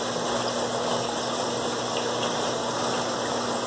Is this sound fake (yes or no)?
no